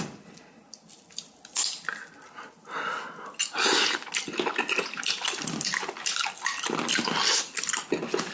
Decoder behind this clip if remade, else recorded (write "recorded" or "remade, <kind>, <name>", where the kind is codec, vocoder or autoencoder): recorded